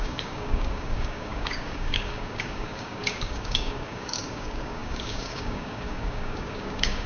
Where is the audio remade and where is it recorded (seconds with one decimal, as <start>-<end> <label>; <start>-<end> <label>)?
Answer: 0.0-7.1 remade